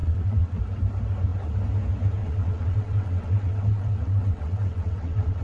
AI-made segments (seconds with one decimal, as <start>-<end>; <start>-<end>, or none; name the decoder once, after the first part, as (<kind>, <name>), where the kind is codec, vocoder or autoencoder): 0.0-0.6 (vocoder, WaveNeXt); 2.2-5.4